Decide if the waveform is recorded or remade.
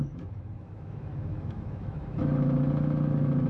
remade